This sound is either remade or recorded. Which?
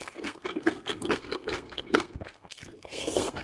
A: remade